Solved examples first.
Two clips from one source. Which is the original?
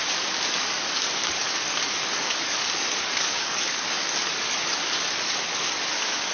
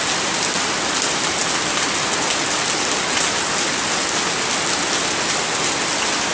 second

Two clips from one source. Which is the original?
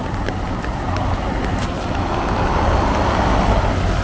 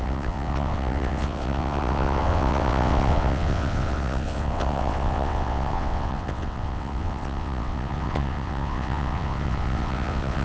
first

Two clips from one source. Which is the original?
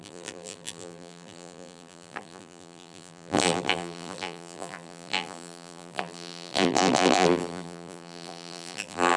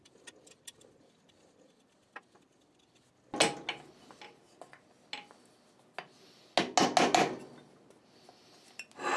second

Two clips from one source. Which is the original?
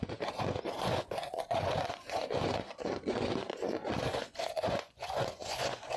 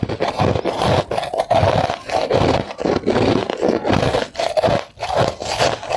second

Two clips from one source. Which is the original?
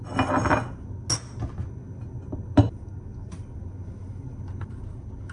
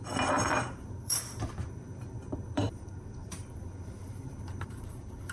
first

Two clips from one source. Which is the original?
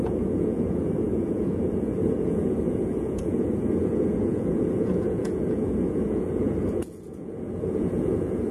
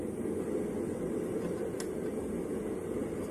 second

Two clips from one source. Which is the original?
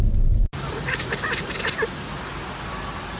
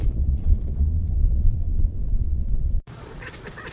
first